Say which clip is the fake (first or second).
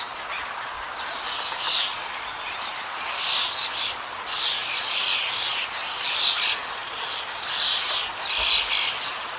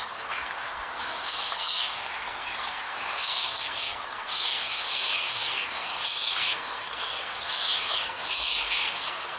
second